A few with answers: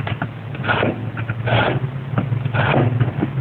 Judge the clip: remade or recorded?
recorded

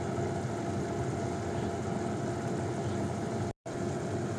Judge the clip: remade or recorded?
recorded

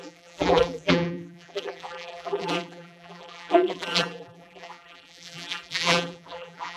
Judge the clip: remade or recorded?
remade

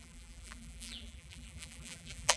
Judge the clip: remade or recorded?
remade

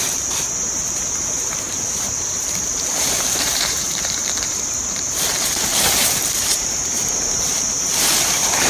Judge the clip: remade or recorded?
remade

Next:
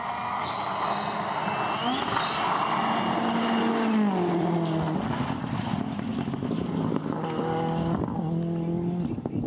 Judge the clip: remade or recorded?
recorded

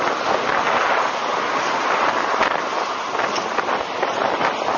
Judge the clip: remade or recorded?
recorded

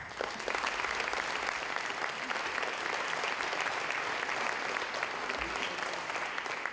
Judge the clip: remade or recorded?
recorded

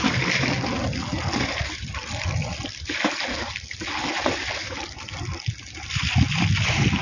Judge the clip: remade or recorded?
recorded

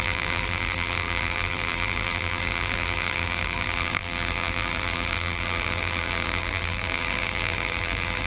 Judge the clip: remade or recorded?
remade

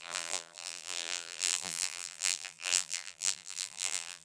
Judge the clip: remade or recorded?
remade